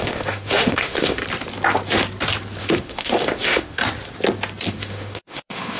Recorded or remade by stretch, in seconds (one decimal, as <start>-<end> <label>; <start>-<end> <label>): 0.0-1.2 remade; 1.2-2.6 recorded; 2.6-3.8 remade; 3.8-4.7 recorded; 4.7-5.8 remade